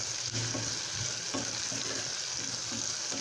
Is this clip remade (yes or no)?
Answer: no